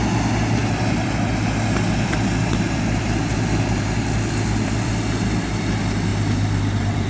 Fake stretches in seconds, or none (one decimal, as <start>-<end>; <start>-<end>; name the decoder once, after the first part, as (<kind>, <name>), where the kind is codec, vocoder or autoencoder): 0.6-4.9 (vocoder, BigVGAN v2); 6.1-7.1